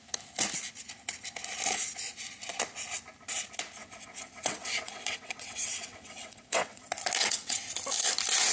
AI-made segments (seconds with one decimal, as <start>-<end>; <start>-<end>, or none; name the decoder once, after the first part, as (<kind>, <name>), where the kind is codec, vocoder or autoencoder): 3.8-6.8 (vocoder, WaveNeXt); 7.2-7.7